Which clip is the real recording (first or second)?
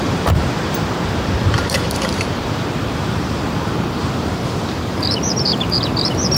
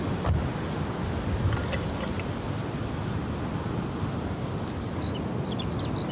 second